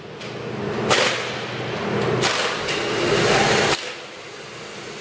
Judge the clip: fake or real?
real